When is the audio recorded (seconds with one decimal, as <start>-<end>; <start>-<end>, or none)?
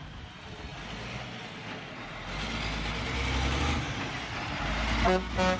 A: 0.0-5.6